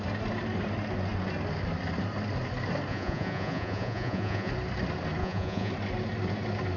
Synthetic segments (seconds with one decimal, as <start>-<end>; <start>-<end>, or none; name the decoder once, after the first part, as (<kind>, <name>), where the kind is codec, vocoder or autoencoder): 2.9-4.5 (vocoder, Vocos); 5.2-5.7